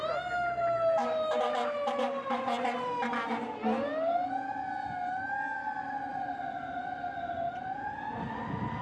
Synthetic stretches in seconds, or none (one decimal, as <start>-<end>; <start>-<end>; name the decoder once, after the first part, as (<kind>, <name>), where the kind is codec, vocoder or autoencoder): 6.1-7.5 (vocoder, BigVGAN v2)